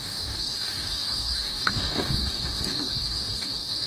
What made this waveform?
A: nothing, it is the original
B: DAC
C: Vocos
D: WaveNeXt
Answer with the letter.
B